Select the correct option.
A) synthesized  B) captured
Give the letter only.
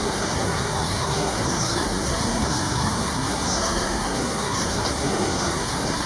A